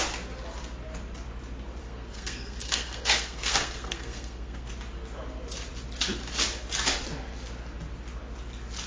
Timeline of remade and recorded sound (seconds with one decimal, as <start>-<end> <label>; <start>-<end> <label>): 0.0-1.8 recorded; 1.8-4.7 remade; 4.7-8.9 recorded